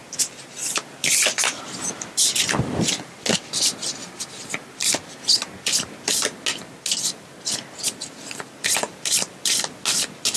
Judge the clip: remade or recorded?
recorded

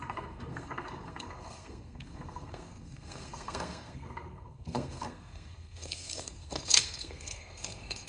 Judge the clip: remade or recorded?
remade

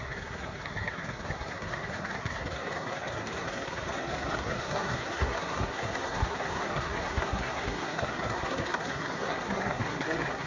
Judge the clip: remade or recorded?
remade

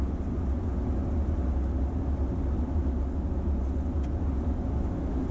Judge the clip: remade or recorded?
recorded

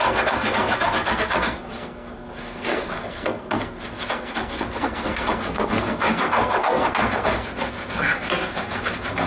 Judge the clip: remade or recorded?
remade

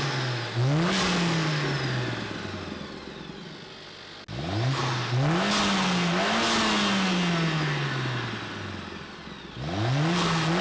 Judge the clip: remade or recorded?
recorded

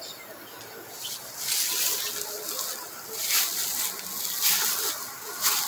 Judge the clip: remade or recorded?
recorded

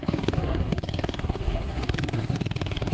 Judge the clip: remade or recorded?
remade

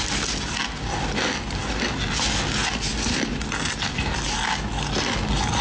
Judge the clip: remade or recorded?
recorded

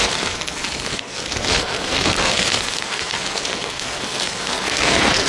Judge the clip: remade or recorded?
remade